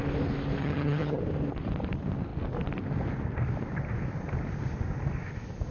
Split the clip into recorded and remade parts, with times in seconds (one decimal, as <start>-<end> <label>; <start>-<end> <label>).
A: 0.0-0.6 recorded; 0.6-1.2 remade; 1.2-5.7 recorded